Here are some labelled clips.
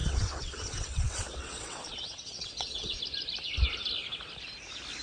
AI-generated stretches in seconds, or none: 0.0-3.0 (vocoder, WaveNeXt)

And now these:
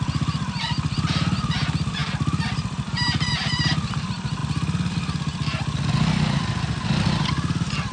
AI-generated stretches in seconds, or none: none

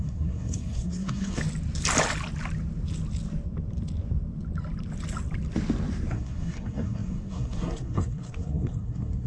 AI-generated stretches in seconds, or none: 0.0-1.4 (codec, SNAC); 6.1-9.3